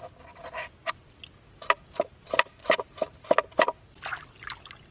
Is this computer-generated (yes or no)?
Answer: no